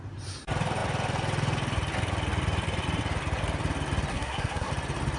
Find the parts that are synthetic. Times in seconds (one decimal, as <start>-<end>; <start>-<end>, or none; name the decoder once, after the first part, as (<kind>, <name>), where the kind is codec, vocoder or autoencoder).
4.1-4.7 (codec, SNAC)